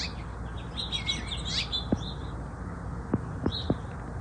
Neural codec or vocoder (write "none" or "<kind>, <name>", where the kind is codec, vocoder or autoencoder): none